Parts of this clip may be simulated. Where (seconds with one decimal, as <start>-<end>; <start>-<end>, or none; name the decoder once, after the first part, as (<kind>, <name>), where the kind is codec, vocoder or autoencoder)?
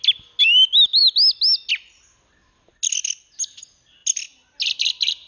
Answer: none